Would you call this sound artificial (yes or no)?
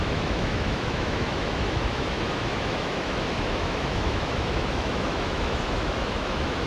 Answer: yes